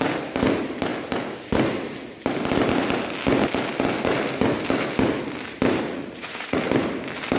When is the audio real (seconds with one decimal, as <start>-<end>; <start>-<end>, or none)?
0.0-5.9; 6.7-7.4